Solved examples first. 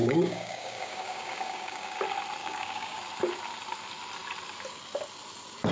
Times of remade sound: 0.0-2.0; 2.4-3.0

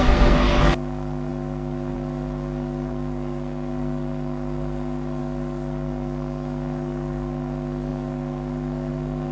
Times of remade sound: 0.0-9.3

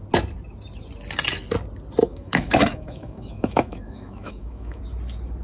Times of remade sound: 2.0-4.8

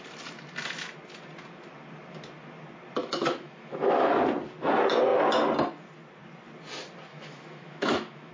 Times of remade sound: 3.0-4.1; 7.1-8.3

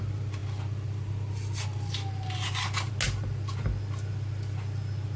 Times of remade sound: none

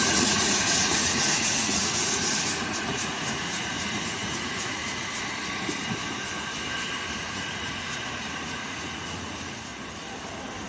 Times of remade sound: 0.0-5.1; 7.2-9.7

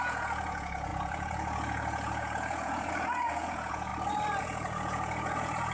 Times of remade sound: 0.0-3.9; 4.4-5.7

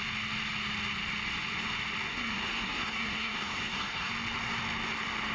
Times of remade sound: 2.1-4.1